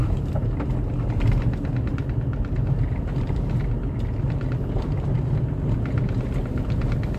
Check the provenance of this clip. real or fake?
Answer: real